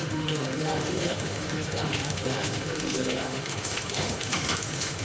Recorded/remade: remade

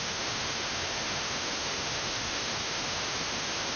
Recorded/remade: remade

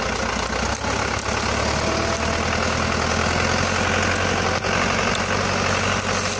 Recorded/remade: recorded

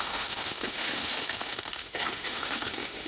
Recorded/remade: remade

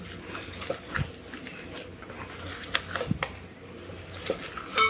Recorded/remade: recorded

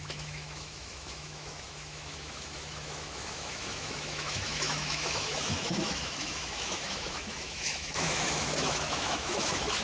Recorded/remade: remade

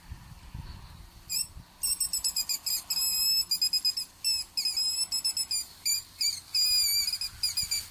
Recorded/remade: recorded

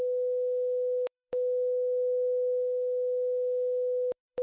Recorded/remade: remade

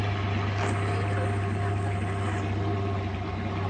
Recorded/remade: recorded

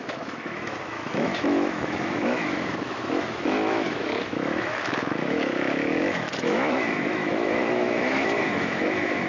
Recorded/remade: remade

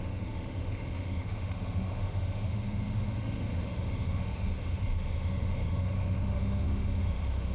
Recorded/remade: remade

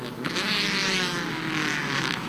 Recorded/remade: remade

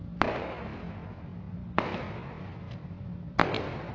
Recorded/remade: recorded